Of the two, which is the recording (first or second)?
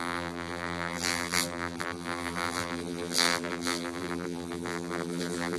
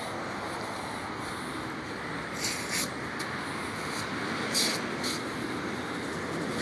second